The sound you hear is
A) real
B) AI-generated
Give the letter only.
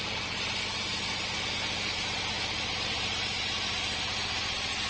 A